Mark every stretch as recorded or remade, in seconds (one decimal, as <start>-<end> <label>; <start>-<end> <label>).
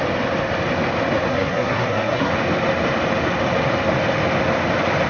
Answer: 0.0-1.3 recorded; 1.3-2.3 remade; 2.3-5.1 recorded